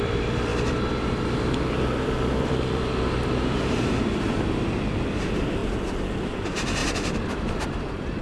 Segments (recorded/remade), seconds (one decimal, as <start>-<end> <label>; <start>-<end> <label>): 0.0-8.2 remade